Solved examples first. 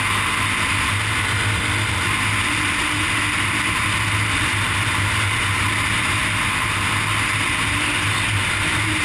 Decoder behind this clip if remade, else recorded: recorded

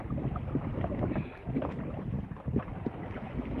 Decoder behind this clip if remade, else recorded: recorded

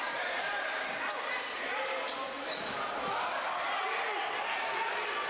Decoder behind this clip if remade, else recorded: recorded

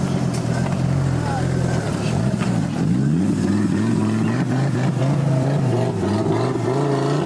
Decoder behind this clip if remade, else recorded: recorded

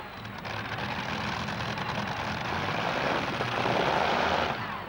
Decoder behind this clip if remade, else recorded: recorded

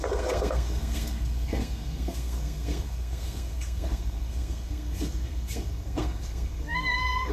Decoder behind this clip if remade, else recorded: remade, codec, SNAC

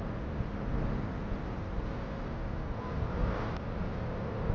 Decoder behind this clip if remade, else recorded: recorded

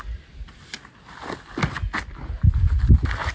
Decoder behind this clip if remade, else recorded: recorded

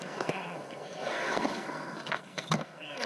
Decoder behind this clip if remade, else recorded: remade, codec, SNAC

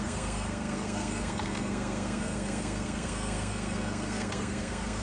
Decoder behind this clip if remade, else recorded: remade, codec, SNAC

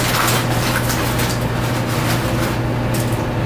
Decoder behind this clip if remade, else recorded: recorded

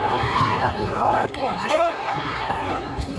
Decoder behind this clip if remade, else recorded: remade, codec, SNAC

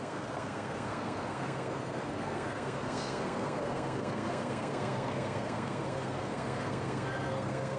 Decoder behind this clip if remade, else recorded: remade, codec, SNAC